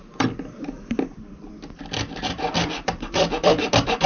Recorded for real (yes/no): no